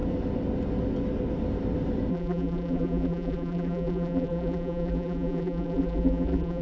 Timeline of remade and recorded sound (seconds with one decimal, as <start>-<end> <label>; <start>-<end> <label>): 0.0-2.1 recorded; 2.1-6.6 remade